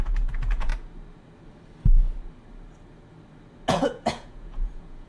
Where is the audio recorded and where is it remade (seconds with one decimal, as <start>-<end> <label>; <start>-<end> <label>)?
0.0-0.7 remade; 0.7-3.7 recorded; 3.7-5.1 remade

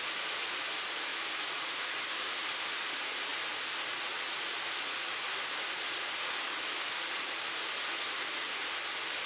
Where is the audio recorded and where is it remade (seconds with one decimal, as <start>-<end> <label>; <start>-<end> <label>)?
0.0-9.3 recorded

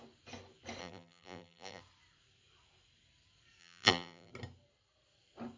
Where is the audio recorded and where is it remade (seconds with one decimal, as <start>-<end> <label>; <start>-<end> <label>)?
0.0-0.8 recorded; 0.8-1.8 remade; 1.8-3.6 recorded; 3.6-4.3 remade; 4.3-5.6 recorded

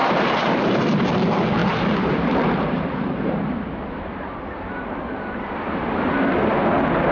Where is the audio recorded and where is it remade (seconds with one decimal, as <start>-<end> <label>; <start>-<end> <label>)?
0.0-1.1 remade; 1.1-1.6 recorded; 1.6-5.9 remade; 5.9-7.1 recorded

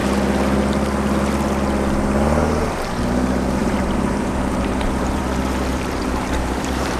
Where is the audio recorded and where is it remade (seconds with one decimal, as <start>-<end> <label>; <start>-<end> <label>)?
0.0-3.6 recorded; 3.6-5.2 remade; 5.2-5.7 recorded; 5.7-7.0 remade

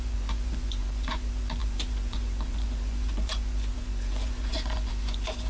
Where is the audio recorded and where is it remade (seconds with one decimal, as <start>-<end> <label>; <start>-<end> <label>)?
0.0-5.5 remade

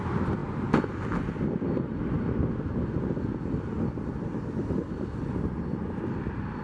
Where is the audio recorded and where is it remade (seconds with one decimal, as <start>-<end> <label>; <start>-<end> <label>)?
0.0-6.6 recorded